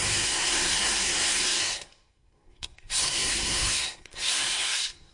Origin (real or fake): fake